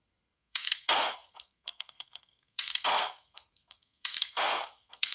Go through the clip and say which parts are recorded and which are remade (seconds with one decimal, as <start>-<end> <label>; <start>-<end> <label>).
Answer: 0.0-5.1 remade